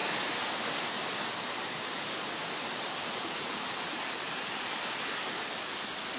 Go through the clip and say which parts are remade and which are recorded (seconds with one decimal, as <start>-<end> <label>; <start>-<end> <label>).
0.0-6.2 recorded